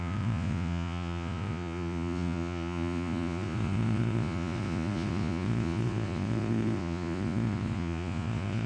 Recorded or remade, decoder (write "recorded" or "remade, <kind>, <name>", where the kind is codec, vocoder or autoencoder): remade, vocoder, Vocos